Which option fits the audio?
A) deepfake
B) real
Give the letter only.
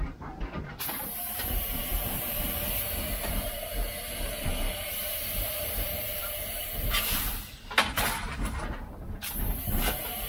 A